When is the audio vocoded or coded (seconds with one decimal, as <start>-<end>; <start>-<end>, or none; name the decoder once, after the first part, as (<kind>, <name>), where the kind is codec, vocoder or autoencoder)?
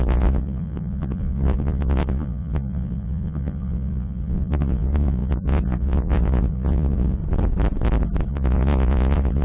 0.0-7.2 (vocoder, Vocos); 8.3-9.4